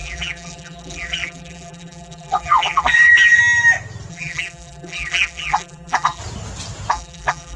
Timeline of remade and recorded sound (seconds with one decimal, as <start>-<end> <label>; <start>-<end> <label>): 0.0-3.4 remade; 3.4-4.1 recorded; 4.1-6.2 remade; 6.2-6.9 recorded; 6.9-7.6 remade